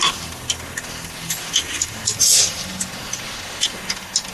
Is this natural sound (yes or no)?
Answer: yes